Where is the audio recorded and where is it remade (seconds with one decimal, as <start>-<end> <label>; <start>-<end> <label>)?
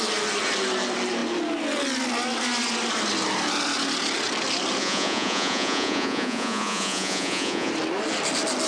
0.0-4.8 recorded; 4.8-7.7 remade; 7.7-8.7 recorded